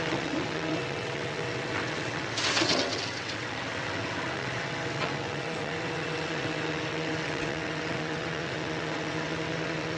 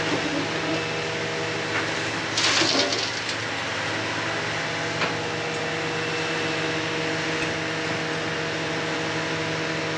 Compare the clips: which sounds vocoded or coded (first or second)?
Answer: first